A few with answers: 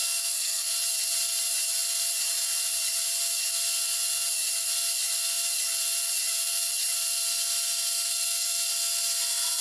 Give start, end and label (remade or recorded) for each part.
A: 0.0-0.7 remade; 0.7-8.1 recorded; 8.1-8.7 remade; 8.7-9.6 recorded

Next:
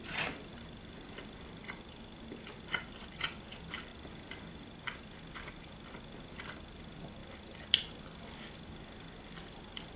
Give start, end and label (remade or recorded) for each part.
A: 0.0-10.0 recorded

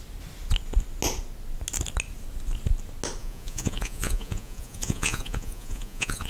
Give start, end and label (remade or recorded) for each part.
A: 0.0-3.2 recorded; 3.2-6.3 remade

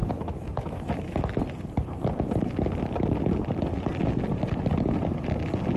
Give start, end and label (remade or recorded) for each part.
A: 0.0-1.2 remade; 1.2-5.8 recorded

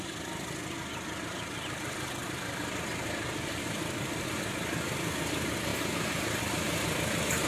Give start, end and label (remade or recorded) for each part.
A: 0.0-7.5 recorded